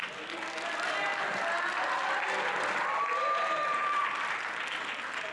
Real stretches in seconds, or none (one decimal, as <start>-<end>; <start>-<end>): 0.0-5.3